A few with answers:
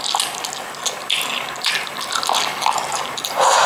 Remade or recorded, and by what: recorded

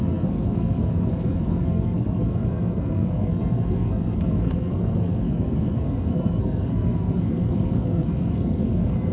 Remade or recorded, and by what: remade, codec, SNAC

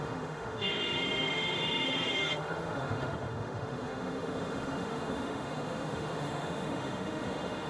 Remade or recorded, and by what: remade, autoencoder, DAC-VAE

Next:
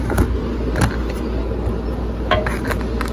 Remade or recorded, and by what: recorded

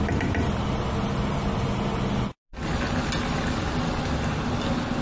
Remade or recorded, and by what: recorded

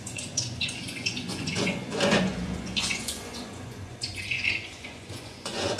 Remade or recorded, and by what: remade, vocoder, Vocos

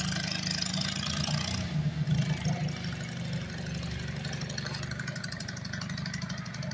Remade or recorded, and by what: recorded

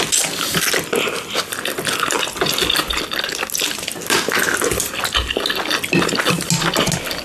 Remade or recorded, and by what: recorded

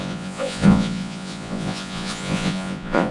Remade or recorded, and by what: remade, vocoder, Vocos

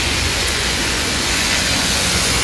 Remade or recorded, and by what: remade, vocoder, Vocos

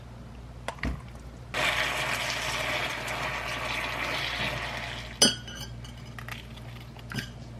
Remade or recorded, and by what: recorded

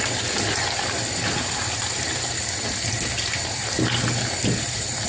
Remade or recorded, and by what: recorded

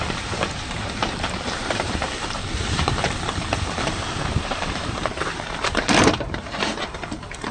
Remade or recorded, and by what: remade, vocoder, BigVGAN v2